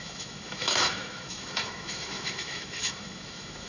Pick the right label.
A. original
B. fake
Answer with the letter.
B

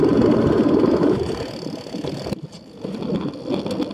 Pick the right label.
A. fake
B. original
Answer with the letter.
B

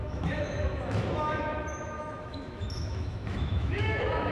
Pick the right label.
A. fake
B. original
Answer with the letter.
A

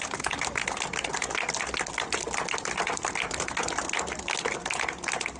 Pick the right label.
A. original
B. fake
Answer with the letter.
A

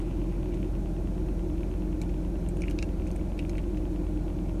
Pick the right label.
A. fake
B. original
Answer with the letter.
B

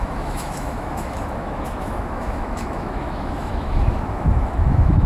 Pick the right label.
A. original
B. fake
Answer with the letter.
B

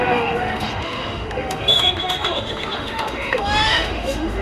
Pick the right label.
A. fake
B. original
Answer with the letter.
A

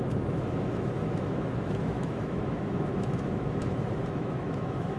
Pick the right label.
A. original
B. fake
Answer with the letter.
B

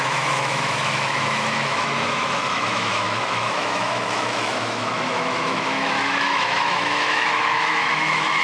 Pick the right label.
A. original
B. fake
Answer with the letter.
B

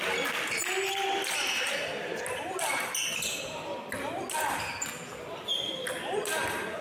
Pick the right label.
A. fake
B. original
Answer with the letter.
B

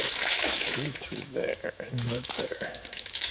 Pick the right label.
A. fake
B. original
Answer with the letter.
A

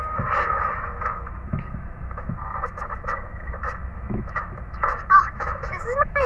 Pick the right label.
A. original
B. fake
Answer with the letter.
B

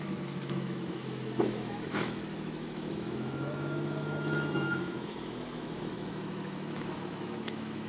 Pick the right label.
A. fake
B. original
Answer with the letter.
A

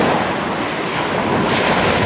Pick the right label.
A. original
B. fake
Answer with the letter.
A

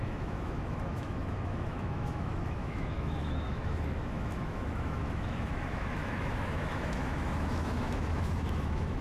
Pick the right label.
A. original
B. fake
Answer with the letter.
B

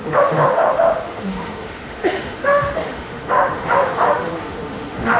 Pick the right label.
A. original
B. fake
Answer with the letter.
B